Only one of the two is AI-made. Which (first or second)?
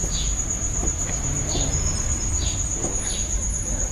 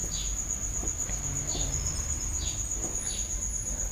first